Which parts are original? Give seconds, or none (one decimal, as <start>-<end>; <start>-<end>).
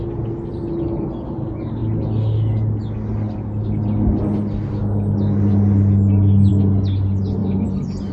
0.0-8.1